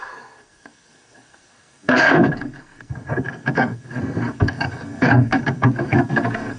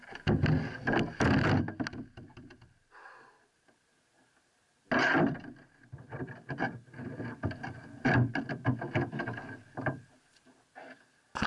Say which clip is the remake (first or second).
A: first